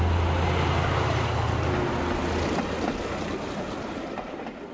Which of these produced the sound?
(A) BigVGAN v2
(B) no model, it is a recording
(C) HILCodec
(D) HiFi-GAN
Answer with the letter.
B